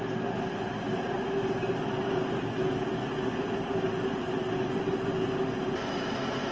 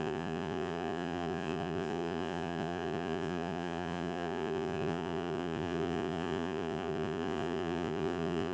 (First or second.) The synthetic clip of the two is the second